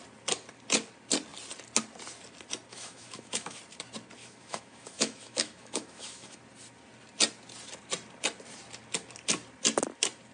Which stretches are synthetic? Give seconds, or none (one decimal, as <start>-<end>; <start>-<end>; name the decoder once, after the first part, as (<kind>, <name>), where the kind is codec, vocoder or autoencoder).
2.7-3.6 (autoencoder, DAC-VAE); 4.2-6.4